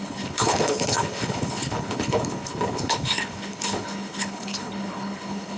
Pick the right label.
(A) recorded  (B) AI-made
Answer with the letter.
B